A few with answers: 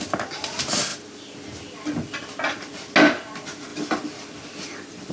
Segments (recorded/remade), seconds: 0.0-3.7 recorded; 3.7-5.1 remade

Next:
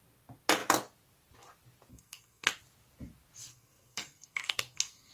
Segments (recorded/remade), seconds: 0.0-1.9 recorded; 1.9-2.5 remade; 2.5-3.5 recorded; 3.5-5.1 remade